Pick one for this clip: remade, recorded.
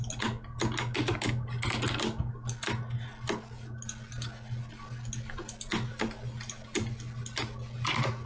recorded